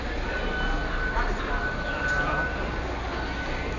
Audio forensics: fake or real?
real